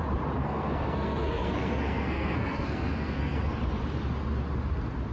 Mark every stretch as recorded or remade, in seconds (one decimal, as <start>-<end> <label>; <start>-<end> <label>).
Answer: 0.0-0.4 recorded; 0.4-3.5 remade; 3.5-5.1 recorded